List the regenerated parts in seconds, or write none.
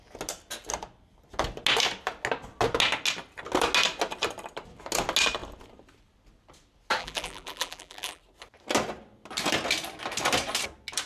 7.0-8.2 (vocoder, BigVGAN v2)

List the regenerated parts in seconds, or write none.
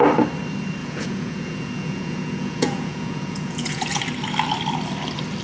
0.8-4.0 (vocoder, Vocos)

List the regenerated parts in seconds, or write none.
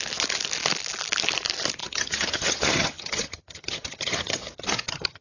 1.8-5.2 (vocoder, HiFi-GAN)